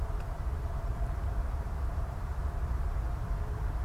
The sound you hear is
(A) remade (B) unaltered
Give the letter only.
A